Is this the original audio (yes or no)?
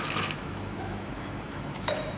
no